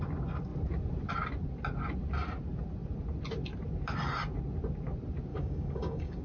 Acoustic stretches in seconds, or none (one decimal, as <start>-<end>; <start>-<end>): 0.0-5.3